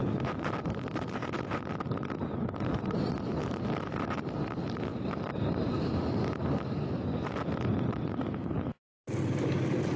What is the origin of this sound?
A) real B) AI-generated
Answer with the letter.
A